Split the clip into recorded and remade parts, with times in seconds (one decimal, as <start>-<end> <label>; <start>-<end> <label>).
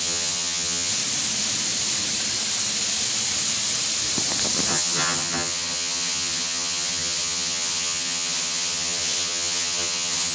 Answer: 0.0-0.9 remade; 0.9-4.7 recorded; 4.7-10.3 remade